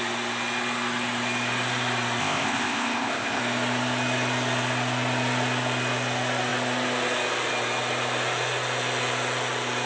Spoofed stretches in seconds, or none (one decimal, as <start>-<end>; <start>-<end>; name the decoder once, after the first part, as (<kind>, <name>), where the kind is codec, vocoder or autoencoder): 2.2-3.4 (codec, ZipCodec)